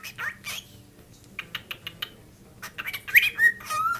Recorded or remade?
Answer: recorded